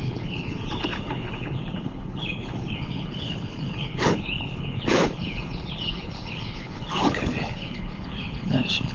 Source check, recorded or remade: remade